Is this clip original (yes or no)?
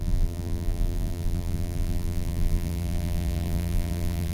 no